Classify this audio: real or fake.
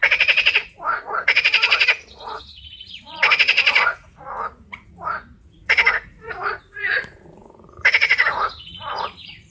fake